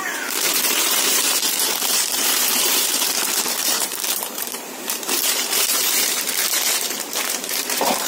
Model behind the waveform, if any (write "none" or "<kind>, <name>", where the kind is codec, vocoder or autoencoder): vocoder, BigVGAN v2